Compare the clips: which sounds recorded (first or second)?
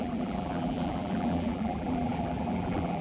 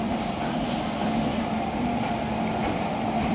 second